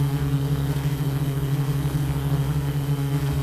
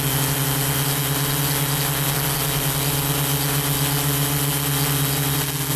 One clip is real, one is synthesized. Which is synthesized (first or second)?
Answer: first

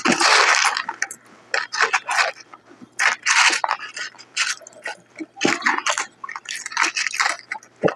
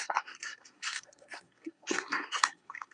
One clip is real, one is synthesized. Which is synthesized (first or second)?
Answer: second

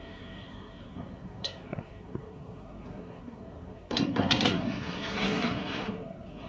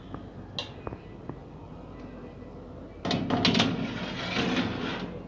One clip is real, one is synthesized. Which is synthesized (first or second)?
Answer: first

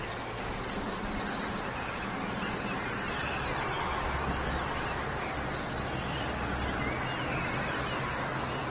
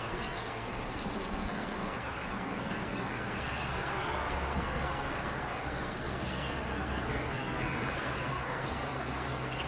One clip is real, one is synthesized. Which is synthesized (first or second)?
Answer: second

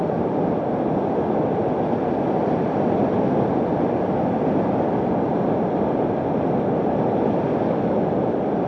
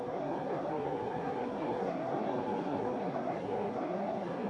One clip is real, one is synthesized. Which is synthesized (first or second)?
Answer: second